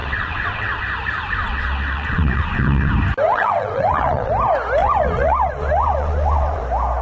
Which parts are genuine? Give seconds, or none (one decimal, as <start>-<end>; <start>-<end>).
0.8-1.4; 2.9-3.3; 4.3-4.8; 6.6-7.0